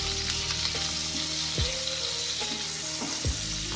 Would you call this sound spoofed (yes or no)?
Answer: no